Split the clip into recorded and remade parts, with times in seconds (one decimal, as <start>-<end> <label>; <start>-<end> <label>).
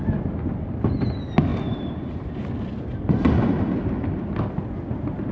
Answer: 0.0-1.5 recorded; 1.5-2.4 remade; 2.4-5.3 recorded